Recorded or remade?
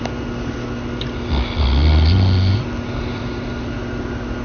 recorded